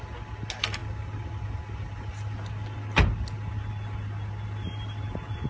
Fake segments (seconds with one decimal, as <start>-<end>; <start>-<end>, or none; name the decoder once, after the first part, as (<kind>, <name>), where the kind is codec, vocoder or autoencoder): none